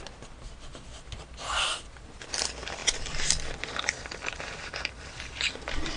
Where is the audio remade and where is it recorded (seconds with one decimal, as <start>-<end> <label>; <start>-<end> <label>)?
0.0-6.0 recorded